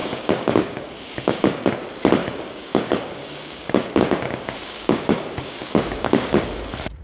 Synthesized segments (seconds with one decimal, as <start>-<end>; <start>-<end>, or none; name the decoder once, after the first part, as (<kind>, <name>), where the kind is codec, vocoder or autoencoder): 0.0-1.7 (codec, DAC); 2.2-6.4